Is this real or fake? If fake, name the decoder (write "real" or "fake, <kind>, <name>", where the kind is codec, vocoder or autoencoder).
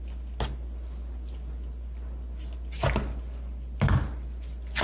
real